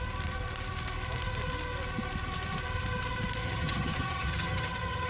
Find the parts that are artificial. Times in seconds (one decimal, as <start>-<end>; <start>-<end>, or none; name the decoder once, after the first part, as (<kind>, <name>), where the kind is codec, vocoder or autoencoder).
3.4-5.1 (vocoder, HiFi-GAN)